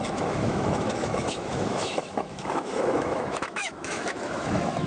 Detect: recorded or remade remade